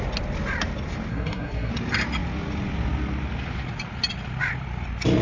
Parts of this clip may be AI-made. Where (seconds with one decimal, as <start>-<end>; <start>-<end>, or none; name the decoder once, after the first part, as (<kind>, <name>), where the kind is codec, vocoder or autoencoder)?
1.1-1.7 (codec, SNAC)